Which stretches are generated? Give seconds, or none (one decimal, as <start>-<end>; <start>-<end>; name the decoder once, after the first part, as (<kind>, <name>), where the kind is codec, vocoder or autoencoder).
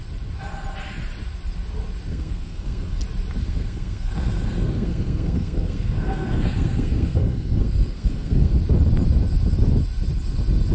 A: 2.1-3.0 (codec, SNAC); 3.4-8.5